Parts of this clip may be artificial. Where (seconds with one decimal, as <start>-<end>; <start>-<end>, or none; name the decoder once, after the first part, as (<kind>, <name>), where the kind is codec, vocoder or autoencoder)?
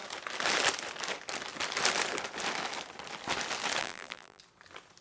3.8-4.4 (vocoder, BigVGAN v2)